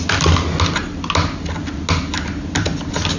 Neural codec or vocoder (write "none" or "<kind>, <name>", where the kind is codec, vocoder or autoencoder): none